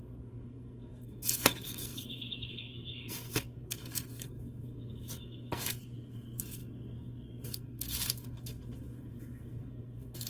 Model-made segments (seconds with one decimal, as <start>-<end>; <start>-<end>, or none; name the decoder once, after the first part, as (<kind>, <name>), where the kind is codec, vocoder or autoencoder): 0.0-10.3 (codec, SNAC)